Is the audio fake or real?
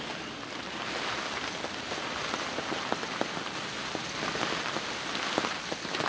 real